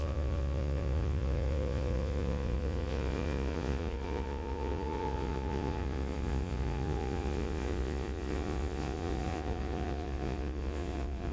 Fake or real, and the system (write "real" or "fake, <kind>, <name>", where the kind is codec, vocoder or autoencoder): fake, vocoder, Vocos